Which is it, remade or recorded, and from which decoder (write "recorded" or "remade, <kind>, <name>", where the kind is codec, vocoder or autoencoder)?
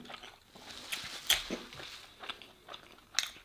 recorded